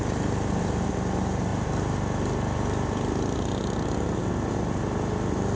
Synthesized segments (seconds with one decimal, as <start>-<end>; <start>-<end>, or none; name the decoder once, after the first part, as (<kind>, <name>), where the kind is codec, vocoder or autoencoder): none